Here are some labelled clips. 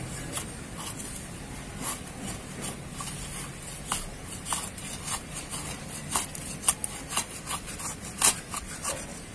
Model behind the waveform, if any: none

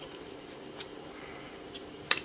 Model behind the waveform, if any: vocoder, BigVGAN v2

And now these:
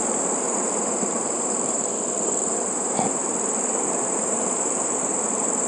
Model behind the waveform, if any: vocoder, BigVGAN v2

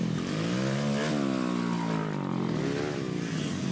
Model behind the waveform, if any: none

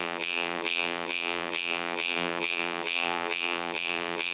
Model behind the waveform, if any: vocoder, BigVGAN v2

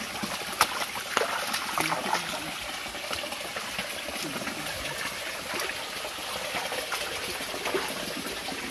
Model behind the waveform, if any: vocoder, BigVGAN v2